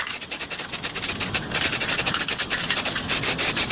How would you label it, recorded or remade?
recorded